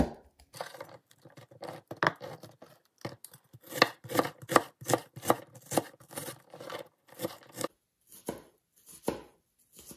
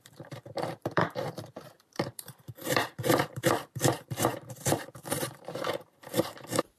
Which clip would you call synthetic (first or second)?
second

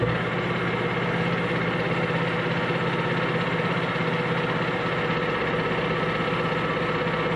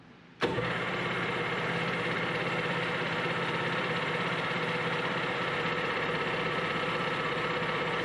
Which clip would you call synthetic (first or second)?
second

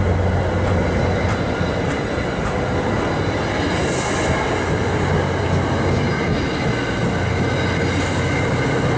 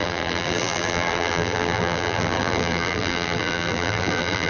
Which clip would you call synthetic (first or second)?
second